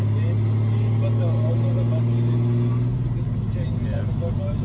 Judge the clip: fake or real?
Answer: real